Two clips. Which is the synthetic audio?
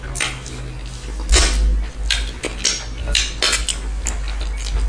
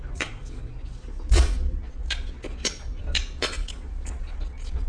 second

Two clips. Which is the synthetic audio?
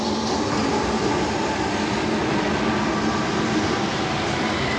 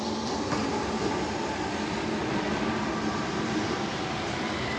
second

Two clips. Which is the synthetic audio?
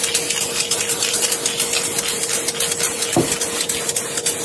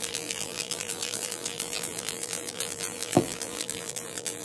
second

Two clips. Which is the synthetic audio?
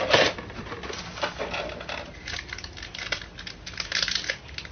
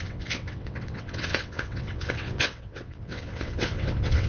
second